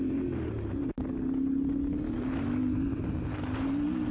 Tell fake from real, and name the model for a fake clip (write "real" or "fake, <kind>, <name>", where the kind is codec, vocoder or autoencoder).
real